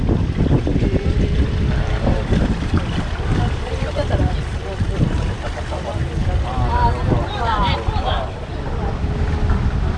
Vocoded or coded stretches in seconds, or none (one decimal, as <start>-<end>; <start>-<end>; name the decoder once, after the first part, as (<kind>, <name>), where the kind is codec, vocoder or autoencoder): 0.0-6.2 (vocoder, BigVGAN v2); 9.5-10.0